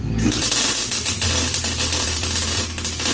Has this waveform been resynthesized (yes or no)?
yes